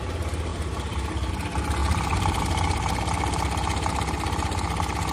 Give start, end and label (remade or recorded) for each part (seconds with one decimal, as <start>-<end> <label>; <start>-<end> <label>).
0.0-0.5 recorded; 0.5-1.3 remade; 1.3-1.8 recorded; 1.8-2.4 remade; 2.4-5.1 recorded